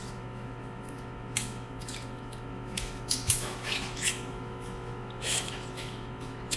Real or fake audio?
fake